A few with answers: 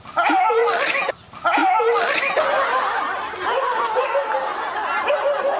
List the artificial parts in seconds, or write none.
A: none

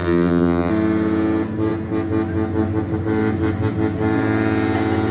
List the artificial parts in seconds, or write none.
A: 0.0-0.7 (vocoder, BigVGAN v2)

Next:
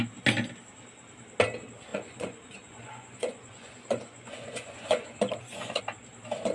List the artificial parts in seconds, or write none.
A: 1.9-5.8 (vocoder, Vocos)

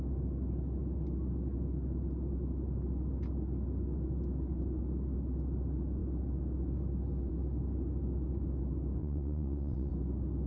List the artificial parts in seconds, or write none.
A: 9.0-9.9 (vocoder, WaveNeXt)

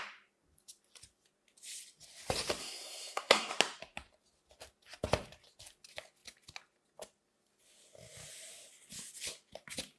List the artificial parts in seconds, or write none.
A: 2.6-3.5 (codec, SNAC)

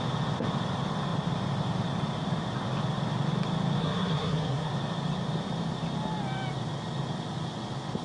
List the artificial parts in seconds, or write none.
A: 3.8-4.7 (codec, SNAC)

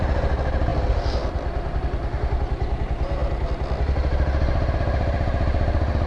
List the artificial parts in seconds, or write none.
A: none

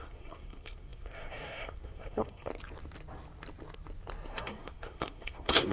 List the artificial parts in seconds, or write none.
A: 0.0-2.5 (codec, SNAC); 4.3-5.7